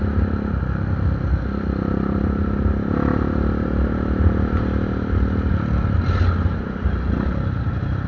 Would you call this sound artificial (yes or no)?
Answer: no